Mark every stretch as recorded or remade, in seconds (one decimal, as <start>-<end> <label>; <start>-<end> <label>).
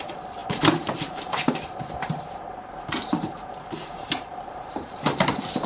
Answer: 0.0-0.4 recorded; 0.4-2.4 remade; 2.4-3.0 recorded; 3.0-5.3 remade; 5.3-5.7 recorded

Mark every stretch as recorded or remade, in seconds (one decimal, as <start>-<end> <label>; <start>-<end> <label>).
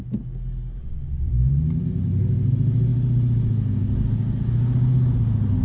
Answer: 0.0-0.8 recorded; 0.8-1.3 remade; 1.3-5.6 recorded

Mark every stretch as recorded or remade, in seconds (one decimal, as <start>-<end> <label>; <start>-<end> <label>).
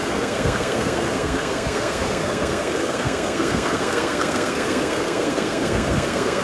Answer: 0.0-6.4 remade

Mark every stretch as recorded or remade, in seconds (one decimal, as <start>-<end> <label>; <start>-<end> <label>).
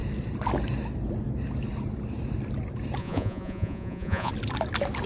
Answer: 0.0-3.0 recorded; 3.0-4.3 remade; 4.3-5.1 recorded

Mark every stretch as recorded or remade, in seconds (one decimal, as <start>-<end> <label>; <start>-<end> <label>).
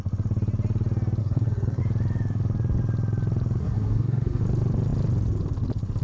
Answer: 0.0-1.2 recorded; 1.2-1.8 remade; 1.8-3.6 recorded; 3.6-4.4 remade; 4.4-6.0 recorded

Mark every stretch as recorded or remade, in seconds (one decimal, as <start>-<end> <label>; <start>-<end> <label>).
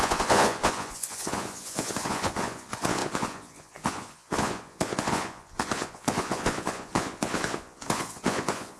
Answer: 0.0-8.8 remade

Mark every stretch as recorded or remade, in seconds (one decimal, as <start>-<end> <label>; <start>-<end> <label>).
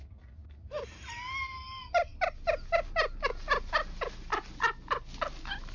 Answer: 0.0-5.7 recorded